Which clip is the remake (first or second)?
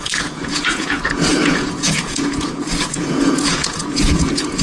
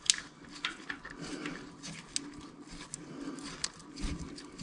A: first